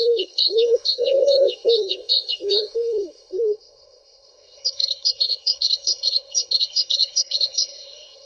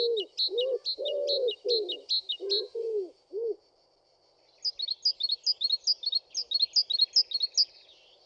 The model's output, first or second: first